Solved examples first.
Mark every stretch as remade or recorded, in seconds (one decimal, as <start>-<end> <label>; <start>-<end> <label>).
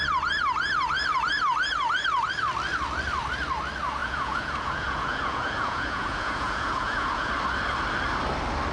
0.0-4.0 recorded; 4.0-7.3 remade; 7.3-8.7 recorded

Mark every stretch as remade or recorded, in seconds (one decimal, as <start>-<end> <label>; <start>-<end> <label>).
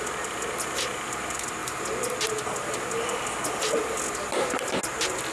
0.0-5.3 recorded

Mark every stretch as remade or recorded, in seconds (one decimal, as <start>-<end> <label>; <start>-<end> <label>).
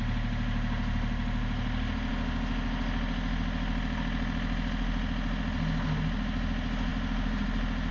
0.0-7.9 recorded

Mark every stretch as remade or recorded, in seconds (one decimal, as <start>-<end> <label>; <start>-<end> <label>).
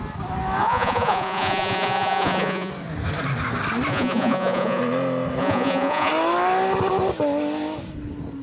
0.0-0.6 recorded; 0.6-2.7 remade; 2.7-3.9 recorded; 3.9-4.8 remade; 4.8-5.4 recorded; 5.4-6.1 remade; 6.1-8.4 recorded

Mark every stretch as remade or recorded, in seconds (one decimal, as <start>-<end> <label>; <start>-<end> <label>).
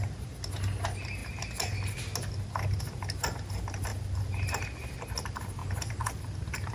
0.0-6.7 recorded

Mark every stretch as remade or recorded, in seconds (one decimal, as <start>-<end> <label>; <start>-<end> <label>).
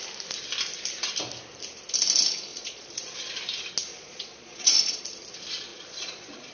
0.0-2.5 recorded; 2.5-3.3 remade; 3.3-3.9 recorded; 3.9-5.0 remade; 5.0-5.7 recorded; 5.7-6.5 remade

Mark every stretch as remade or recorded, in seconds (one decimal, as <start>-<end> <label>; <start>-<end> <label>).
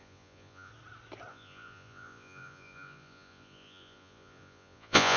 0.0-0.7 remade; 0.7-1.3 recorded; 1.3-5.2 remade